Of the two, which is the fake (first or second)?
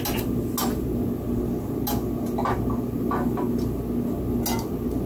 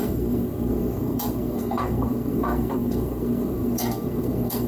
second